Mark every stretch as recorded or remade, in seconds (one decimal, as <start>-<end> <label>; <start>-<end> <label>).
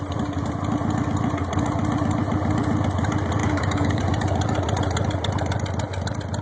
0.0-3.4 recorded; 3.4-4.0 remade; 4.0-6.4 recorded